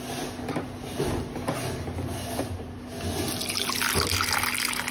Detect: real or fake real